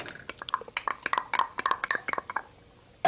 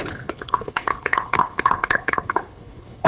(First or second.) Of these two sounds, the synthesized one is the second